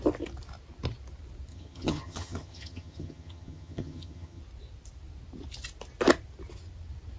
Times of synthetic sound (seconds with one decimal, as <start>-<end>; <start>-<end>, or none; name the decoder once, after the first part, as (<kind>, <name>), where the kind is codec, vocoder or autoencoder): 1.5-4.4 (vocoder, HiFi-GAN)

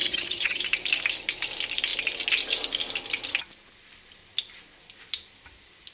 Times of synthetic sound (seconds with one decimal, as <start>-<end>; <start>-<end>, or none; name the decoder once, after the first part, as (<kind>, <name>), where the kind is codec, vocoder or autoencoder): 0.0-0.6 (vocoder, HiFi-GAN)